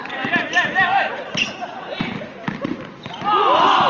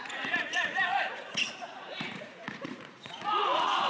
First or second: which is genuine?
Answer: first